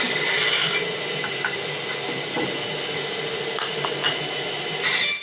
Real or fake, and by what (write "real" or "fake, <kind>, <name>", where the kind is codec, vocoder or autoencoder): real